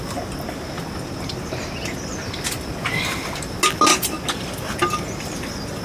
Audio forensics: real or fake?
real